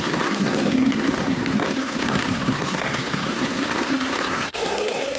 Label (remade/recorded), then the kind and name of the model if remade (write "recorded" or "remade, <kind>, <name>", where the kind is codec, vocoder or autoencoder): remade, codec, SNAC